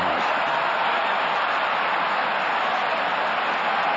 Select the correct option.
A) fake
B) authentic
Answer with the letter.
B